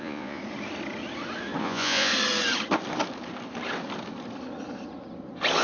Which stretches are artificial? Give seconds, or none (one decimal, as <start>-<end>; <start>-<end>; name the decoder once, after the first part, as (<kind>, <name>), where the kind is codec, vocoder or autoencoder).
0.0-0.4 (vocoder, Vocos); 1.6-2.1